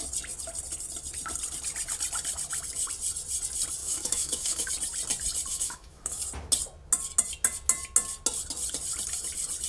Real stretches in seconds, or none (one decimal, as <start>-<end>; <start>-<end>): 0.0-3.8; 4.7-5.5; 6.2-9.7